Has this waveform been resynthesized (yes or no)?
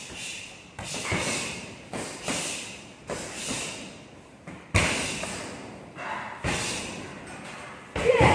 no